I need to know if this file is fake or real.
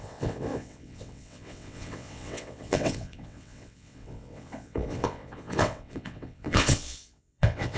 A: fake